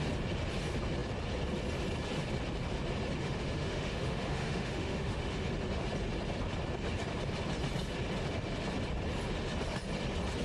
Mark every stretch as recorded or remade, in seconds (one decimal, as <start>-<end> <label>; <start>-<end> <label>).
0.0-3.2 recorded; 3.2-5.5 remade; 5.5-10.4 recorded